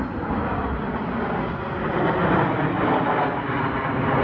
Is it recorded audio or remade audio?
recorded